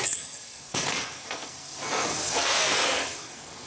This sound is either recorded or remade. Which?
remade